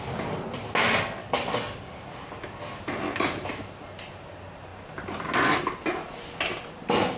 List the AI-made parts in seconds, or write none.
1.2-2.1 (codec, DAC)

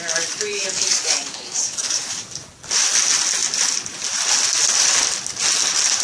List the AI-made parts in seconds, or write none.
0.5-2.3 (codec, DAC)

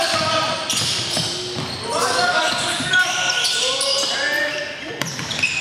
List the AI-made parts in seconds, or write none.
2.0-3.1 (codec, DAC)

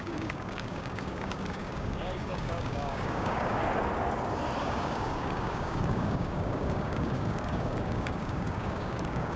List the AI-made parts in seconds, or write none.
0.0-3.6 (codec, DAC); 4.6-9.4

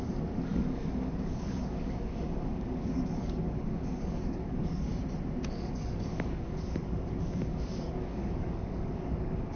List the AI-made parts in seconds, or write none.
0.0-4.9 (codec, DAC); 5.6-9.6

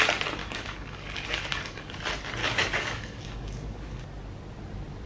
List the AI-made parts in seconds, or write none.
0.4-2.0 (codec, DAC); 2.4-4.0